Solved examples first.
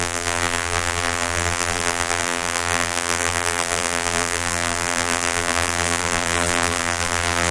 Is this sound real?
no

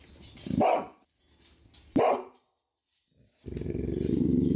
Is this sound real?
yes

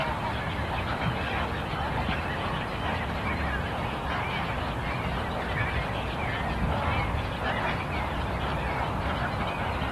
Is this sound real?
yes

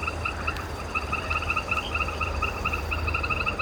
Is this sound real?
no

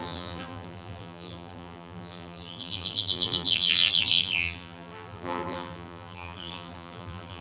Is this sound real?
no